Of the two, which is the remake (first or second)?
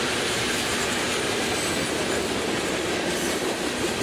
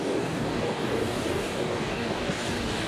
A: second